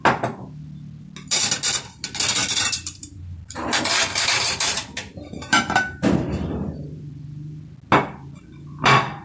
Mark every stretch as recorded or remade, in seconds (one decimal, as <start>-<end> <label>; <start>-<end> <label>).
0.0-2.4 recorded; 2.4-7.0 remade; 7.0-9.2 recorded